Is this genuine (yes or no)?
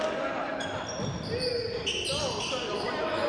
yes